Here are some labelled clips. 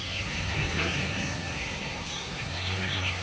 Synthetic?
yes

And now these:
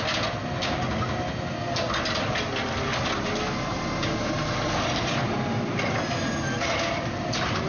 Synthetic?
no